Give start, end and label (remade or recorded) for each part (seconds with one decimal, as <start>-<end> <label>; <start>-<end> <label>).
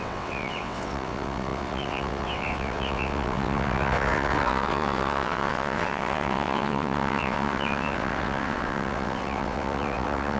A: 0.0-10.4 remade